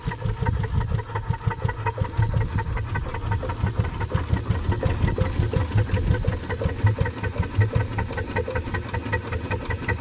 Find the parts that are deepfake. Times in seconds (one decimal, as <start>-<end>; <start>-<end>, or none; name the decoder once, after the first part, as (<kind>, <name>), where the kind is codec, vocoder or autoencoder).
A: none